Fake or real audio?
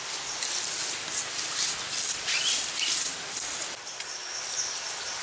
real